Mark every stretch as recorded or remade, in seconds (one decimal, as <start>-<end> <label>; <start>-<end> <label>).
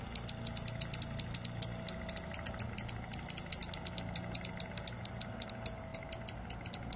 0.0-7.0 recorded